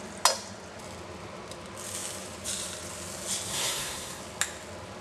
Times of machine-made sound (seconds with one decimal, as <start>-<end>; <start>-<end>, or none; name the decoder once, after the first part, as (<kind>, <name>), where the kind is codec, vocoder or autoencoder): 3.5-4.2 (codec, SNAC)